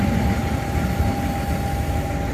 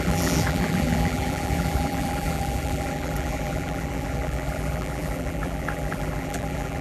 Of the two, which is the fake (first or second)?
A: second